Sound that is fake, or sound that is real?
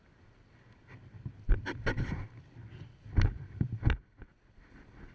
real